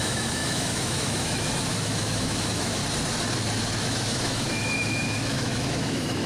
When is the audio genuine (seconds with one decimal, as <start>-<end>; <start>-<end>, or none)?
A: 2.8-3.8